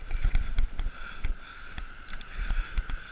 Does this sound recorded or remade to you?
recorded